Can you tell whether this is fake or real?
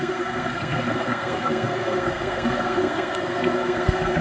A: fake